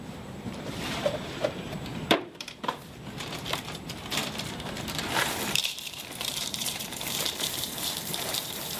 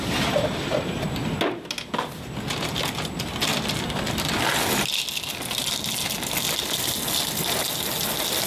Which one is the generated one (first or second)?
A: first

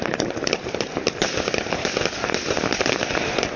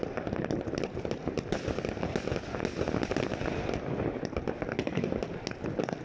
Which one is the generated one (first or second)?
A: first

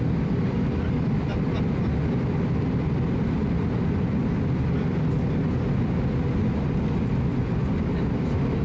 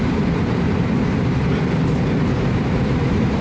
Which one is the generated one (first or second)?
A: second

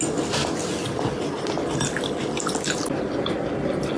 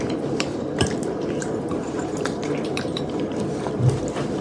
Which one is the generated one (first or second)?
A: second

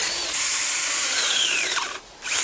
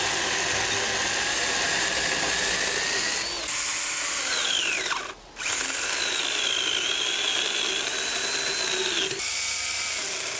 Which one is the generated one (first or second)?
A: first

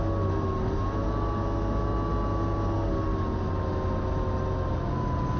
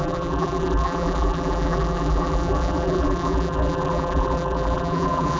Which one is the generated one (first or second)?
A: second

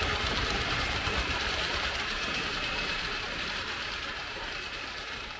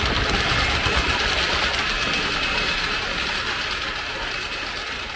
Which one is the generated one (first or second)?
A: first